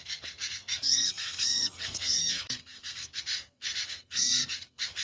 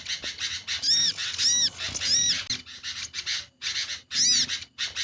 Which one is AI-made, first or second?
first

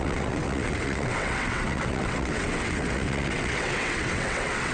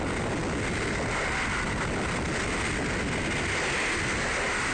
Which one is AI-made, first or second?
first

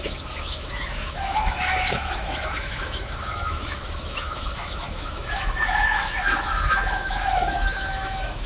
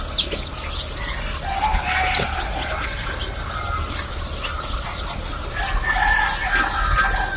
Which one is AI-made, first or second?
first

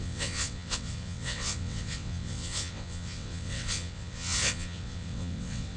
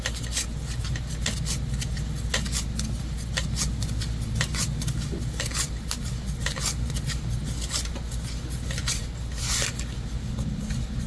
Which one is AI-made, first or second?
first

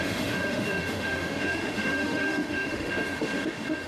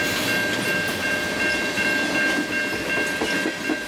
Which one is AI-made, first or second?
first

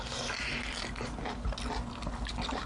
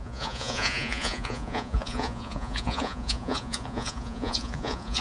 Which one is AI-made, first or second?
second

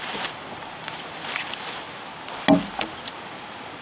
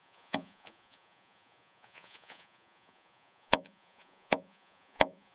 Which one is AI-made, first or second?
second